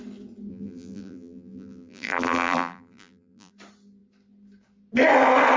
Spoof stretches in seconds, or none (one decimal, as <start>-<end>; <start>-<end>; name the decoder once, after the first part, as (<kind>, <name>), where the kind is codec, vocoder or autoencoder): 0.5-3.5 (vocoder, BigVGAN v2)